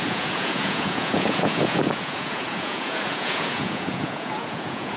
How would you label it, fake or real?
fake